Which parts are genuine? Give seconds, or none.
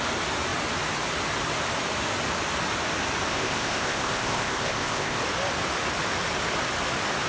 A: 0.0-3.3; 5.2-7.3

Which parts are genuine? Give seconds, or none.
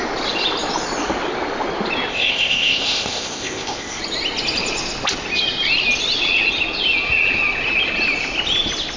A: 0.0-2.1; 4.0-9.0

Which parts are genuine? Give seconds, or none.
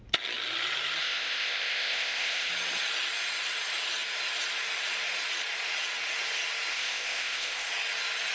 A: 0.0-1.0; 2.5-6.7; 7.7-8.3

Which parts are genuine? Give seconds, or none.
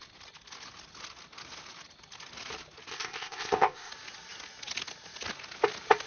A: 0.0-2.9; 3.9-6.1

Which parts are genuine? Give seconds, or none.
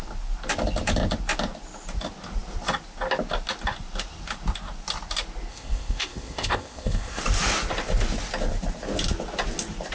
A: 0.0-5.5; 7.2-9.9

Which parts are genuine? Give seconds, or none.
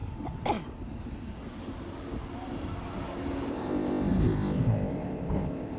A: 0.0-3.5